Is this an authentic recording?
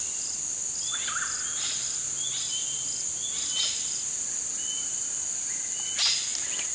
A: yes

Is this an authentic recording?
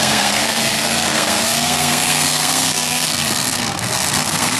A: no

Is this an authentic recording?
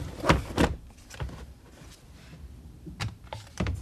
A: no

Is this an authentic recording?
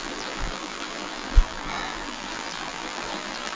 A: no